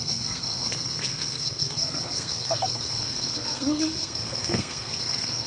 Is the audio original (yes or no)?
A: no